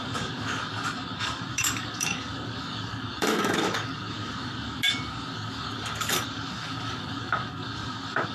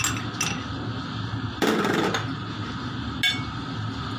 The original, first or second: second